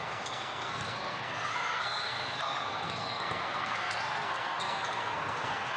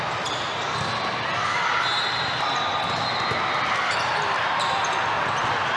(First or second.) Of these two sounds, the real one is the second